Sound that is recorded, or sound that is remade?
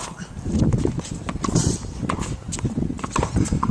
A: recorded